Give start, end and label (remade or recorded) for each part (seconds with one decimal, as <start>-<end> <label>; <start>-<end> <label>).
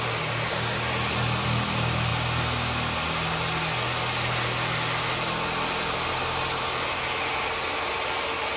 0.0-8.6 recorded